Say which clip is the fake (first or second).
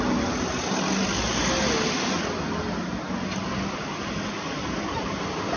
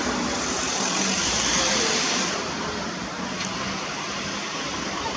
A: second